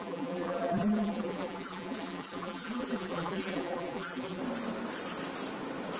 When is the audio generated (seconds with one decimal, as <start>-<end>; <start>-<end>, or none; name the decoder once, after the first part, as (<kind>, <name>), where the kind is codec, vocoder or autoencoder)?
0.0-4.4 (vocoder, BigVGAN v2)